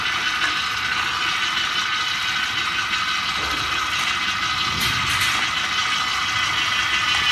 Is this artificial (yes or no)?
no